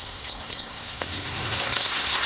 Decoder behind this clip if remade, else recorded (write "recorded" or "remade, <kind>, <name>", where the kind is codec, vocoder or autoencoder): remade, codec, SNAC